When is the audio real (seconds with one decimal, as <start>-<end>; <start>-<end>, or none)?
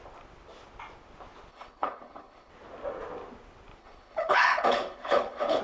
0.0-1.5; 2.5-3.8